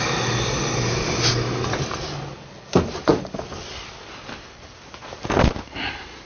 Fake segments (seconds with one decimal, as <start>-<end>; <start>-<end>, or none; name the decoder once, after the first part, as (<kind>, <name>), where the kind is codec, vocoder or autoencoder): none